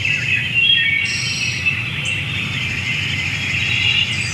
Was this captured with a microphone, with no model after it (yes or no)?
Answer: yes